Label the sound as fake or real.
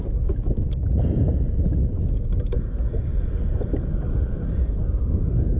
real